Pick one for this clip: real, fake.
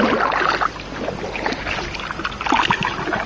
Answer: real